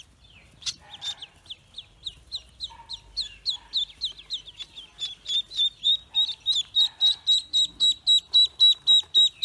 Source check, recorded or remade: recorded